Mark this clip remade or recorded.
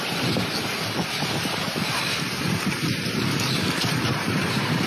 remade